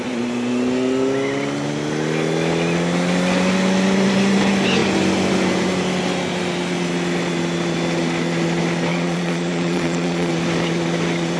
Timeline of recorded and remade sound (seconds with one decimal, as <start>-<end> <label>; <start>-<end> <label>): 0.0-8.9 recorded; 8.9-10.3 remade; 10.3-11.4 recorded